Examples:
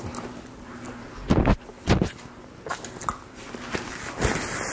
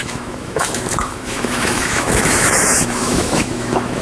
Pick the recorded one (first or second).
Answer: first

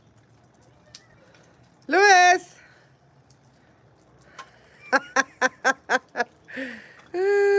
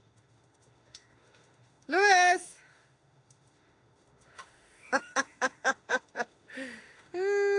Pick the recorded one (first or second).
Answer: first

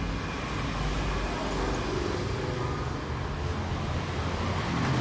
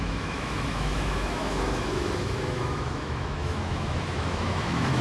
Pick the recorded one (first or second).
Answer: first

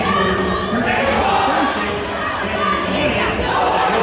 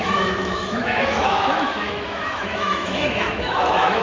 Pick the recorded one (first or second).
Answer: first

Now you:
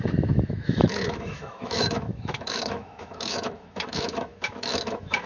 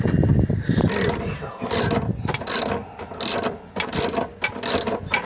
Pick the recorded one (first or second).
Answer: second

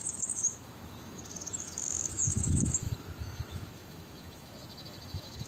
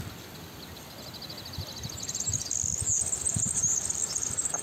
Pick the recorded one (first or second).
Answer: second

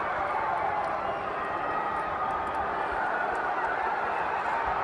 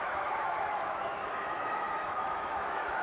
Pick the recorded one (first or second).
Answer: first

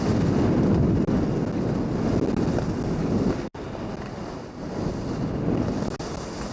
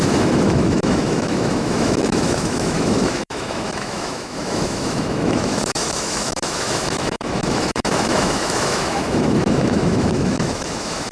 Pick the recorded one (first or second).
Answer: first